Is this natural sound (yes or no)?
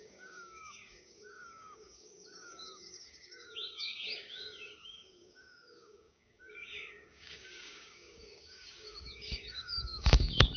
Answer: no